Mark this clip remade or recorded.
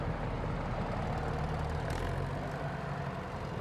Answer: recorded